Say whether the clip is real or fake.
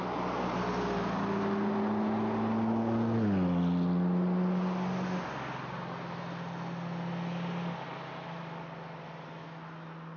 real